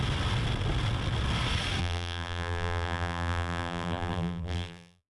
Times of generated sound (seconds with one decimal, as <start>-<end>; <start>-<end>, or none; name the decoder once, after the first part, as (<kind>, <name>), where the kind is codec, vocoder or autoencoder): 1.8-5.1 (vocoder, BigVGAN v2)